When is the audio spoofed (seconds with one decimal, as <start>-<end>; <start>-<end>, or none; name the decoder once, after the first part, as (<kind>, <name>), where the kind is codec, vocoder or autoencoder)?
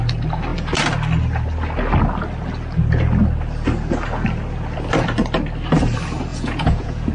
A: 6.3-7.1 (vocoder, Vocos)